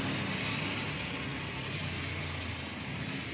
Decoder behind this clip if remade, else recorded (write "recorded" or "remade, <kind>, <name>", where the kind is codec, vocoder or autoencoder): recorded